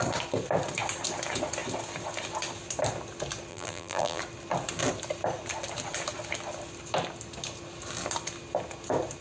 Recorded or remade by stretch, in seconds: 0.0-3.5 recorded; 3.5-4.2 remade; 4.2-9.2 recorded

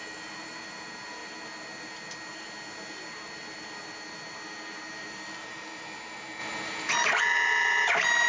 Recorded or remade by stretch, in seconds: 0.0-8.3 recorded

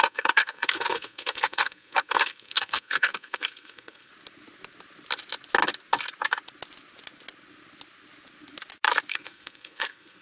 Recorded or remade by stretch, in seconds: 0.0-4.1 remade; 4.1-9.1 recorded; 9.1-10.2 remade

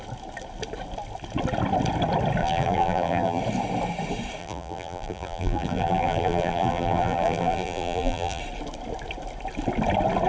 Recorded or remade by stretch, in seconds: 0.0-2.4 recorded; 2.4-3.4 remade; 3.4-4.4 recorded; 4.4-8.4 remade; 8.4-10.3 recorded

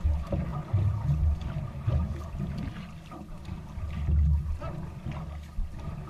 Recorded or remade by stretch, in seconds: 0.0-6.1 recorded

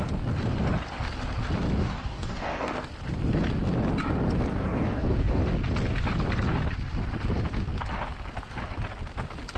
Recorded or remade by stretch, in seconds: 0.0-1.8 recorded; 1.8-2.7 remade; 2.7-4.5 recorded; 4.5-5.4 remade; 5.4-9.6 recorded

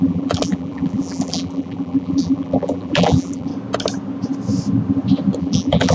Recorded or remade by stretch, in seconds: 0.0-3.5 remade; 3.5-5.4 recorded; 5.4-5.9 remade